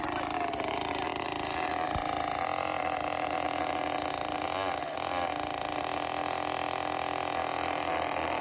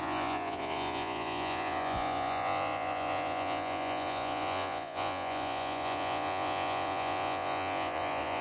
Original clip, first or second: first